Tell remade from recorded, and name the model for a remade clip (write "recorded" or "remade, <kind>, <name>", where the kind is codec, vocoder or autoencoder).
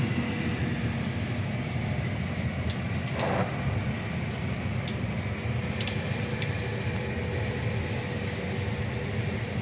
recorded